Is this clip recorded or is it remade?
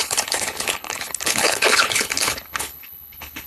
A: remade